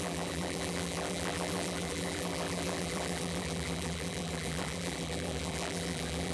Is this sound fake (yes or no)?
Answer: yes